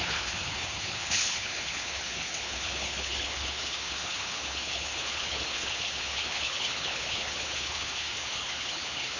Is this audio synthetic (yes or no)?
yes